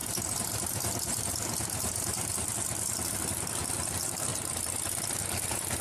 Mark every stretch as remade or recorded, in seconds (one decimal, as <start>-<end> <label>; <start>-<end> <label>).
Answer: 0.0-5.8 recorded